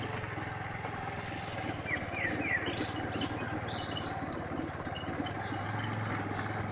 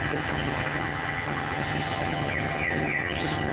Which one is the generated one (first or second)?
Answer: second